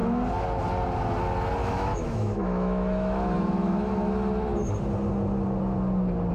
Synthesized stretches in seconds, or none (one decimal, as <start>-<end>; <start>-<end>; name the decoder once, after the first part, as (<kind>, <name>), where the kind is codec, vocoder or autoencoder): 1.6-4.1 (autoencoder, DAC-VAE)